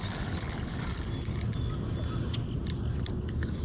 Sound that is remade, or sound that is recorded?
recorded